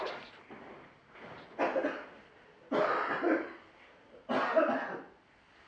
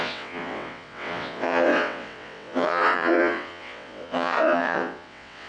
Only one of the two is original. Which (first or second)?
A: first